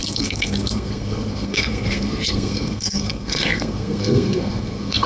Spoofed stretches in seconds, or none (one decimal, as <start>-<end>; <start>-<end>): 0.0-5.1